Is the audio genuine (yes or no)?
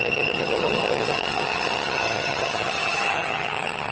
no